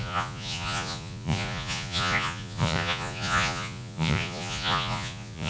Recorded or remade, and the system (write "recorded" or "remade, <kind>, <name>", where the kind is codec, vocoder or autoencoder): remade, vocoder, Vocos